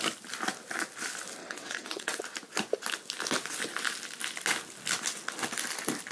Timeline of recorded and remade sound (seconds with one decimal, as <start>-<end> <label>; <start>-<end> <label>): 0.0-1.4 recorded; 1.4-2.2 remade; 2.2-6.1 recorded